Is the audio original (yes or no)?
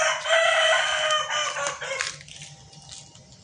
yes